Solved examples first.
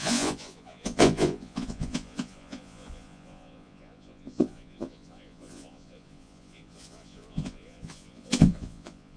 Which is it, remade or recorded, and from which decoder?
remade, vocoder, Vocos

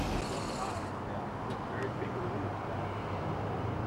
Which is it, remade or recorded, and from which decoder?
recorded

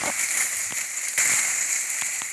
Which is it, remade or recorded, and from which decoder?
recorded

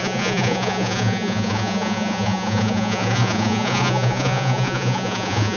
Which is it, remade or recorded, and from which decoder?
remade, vocoder, Vocos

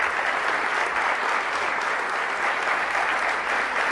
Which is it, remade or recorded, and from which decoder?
recorded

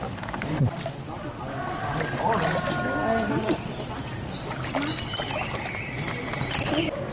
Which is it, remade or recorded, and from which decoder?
recorded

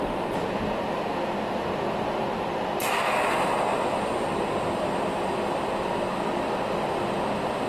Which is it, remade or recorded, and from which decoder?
recorded